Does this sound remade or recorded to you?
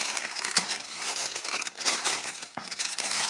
remade